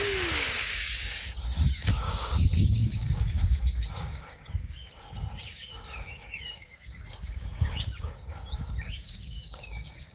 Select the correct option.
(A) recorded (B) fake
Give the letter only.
B